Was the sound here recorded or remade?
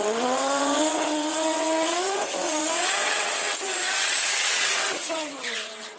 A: remade